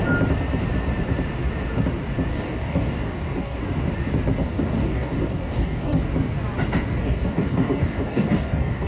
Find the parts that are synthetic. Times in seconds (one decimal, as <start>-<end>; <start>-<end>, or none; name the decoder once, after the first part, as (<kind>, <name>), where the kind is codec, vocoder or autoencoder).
2.3-3.6 (codec, DAC); 4.4-6.1; 6.9-8.9